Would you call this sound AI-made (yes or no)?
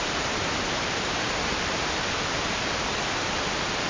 no